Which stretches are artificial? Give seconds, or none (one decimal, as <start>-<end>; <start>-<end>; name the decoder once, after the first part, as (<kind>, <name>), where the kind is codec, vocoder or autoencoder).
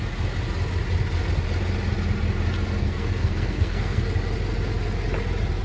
2.8-4.0 (codec, SNAC)